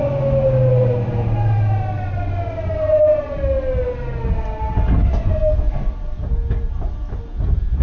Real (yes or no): yes